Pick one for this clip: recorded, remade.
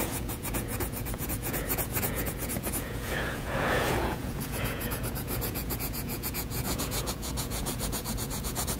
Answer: remade